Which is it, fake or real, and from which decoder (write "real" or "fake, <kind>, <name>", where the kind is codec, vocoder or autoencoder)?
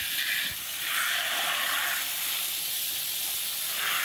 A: real